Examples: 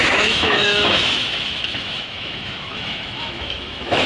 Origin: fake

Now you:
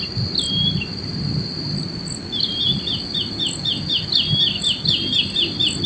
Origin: real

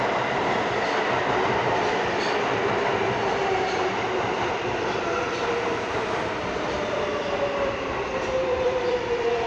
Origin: fake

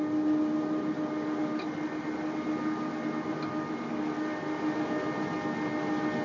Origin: real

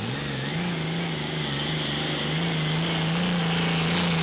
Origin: real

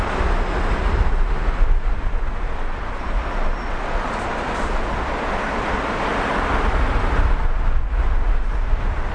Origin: real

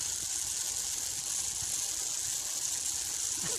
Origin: real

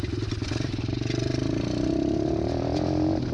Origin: real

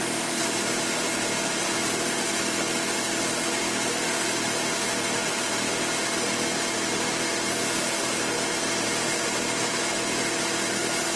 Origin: real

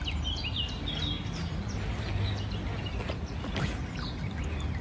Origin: real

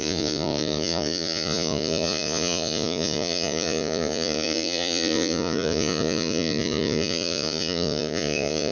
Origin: fake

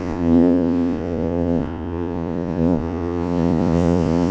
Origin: fake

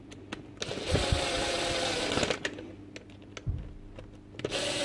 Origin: real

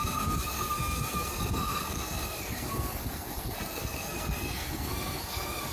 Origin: fake